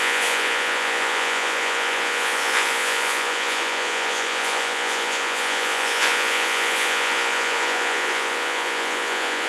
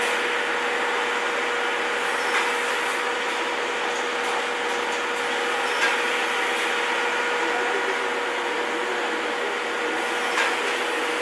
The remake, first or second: first